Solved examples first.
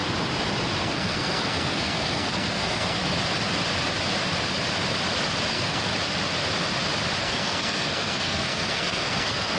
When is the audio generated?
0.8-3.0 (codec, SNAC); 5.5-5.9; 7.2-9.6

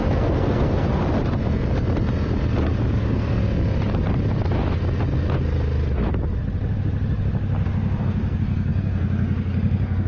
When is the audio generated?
0.0-1.0 (codec, SNAC); 3.0-3.4; 8.0-10.1

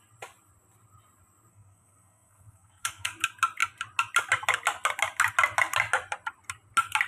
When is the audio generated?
1.5-3.1 (codec, SNAC)

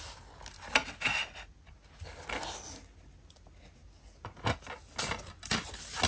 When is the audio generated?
none

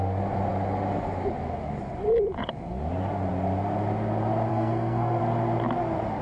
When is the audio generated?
4.5-5.2 (codec, SNAC)

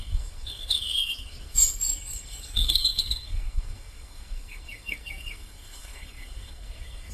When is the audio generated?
0.0-7.1 (codec, SNAC)